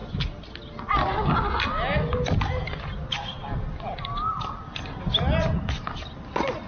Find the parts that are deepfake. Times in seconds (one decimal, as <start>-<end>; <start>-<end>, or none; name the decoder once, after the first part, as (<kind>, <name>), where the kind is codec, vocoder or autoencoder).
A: none

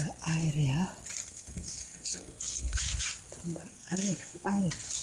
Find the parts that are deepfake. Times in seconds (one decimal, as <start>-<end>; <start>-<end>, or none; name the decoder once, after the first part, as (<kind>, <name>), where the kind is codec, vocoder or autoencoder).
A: 1.2-2.8 (codec, SNAC); 3.7-4.6

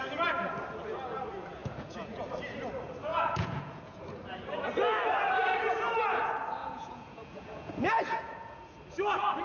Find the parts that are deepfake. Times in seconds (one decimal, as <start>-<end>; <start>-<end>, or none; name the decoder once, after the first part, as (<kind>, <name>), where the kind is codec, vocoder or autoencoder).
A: 1.6-2.2 (vocoder, Vocos); 3.1-4.0; 6.6-8.6

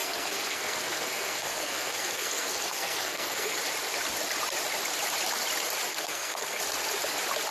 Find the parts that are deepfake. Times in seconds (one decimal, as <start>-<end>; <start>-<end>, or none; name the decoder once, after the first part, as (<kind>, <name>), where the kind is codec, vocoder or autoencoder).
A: 0.0-3.6 (codec, SNAC); 5.9-6.6

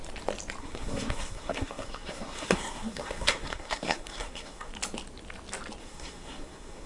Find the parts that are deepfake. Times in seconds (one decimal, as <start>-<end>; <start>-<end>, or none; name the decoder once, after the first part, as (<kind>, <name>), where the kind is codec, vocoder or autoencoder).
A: 0.6-4.7 (codec, SNAC); 5.8-6.9

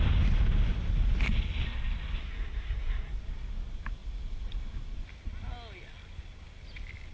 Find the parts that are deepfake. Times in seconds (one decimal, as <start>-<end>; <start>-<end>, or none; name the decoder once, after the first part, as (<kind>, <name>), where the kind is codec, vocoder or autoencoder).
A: 2.2-3.2 (codec, SNAC)

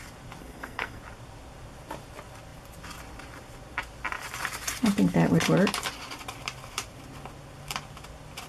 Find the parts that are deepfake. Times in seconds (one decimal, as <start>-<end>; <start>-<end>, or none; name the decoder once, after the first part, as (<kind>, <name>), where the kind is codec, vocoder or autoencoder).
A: 0.4-1.0 (codec, SNAC)

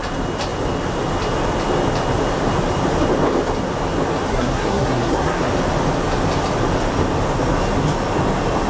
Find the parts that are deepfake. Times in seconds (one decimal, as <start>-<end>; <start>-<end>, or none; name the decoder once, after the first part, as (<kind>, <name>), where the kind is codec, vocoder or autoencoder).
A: 4.3-5.5 (codec, SNAC)